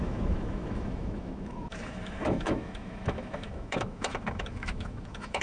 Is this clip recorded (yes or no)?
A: no